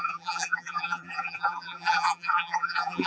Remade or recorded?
remade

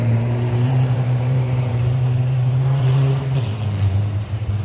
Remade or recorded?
remade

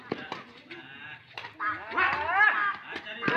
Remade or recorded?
recorded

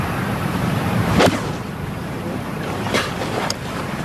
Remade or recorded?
remade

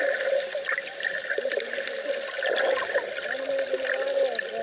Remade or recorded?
recorded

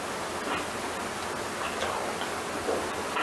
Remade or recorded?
recorded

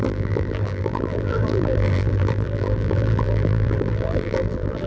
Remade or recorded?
remade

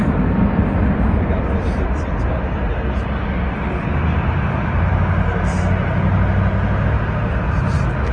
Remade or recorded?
recorded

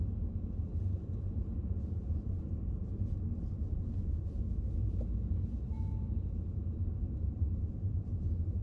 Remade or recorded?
remade